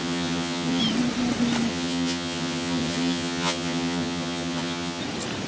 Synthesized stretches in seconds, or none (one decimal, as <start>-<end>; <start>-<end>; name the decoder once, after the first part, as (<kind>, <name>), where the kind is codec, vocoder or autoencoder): 0.0-0.8 (vocoder, HiFi-GAN); 1.7-5.0